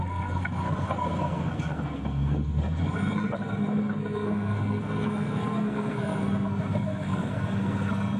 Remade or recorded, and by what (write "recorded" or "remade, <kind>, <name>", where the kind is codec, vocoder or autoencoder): remade, codec, SNAC